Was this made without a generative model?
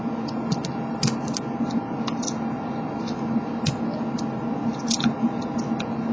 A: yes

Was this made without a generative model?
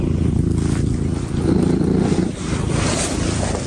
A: yes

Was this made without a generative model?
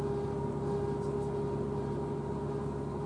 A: yes